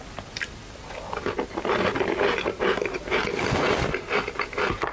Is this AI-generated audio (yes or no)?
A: no